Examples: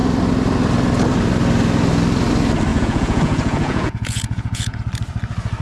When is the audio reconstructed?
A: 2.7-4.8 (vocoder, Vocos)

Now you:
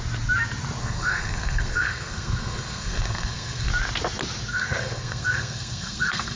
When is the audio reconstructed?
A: 0.8-3.7 (codec, SNAC); 4.5-6.4

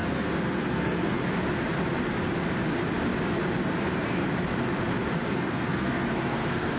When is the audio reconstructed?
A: 0.0-1.2 (codec, SNAC); 5.3-6.8

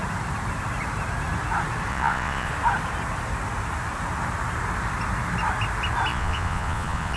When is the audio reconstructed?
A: 1.9-2.5 (vocoder, Vocos); 6.1-7.2

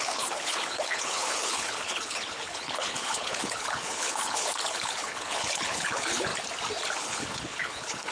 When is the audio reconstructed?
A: 0.0-6.3 (codec, HILCodec); 7.0-8.1

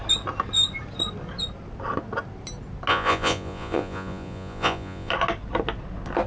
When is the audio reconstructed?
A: 2.9-5.1 (vocoder, Vocos)